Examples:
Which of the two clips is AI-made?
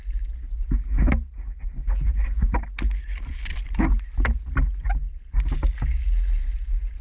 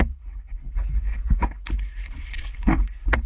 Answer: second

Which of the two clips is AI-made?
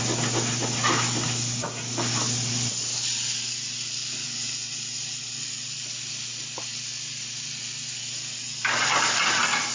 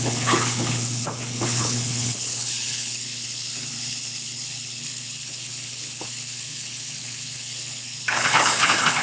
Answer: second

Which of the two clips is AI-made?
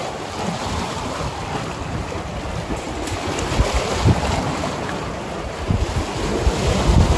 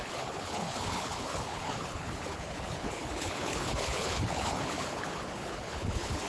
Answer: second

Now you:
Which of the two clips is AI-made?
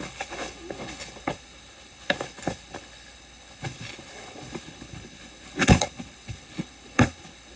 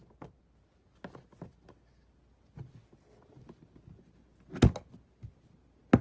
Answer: first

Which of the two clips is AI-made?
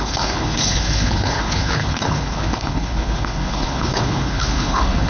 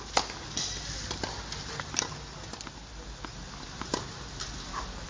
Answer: first